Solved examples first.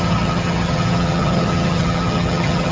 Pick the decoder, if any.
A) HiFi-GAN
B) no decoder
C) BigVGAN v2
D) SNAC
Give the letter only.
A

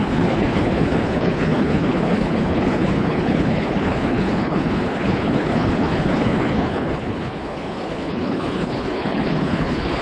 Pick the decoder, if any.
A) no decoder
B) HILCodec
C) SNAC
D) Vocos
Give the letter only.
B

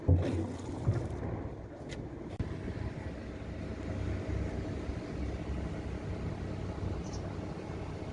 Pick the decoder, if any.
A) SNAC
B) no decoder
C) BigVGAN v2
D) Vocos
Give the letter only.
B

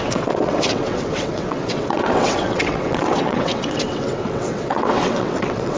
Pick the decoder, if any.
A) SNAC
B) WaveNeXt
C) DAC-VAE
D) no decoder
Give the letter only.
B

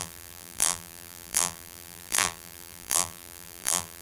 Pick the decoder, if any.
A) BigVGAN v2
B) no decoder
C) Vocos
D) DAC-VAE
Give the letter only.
A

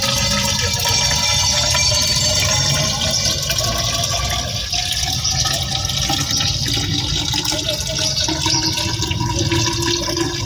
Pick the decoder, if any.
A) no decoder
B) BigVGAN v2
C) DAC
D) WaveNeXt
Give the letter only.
A